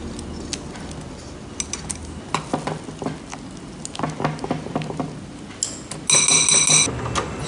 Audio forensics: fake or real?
real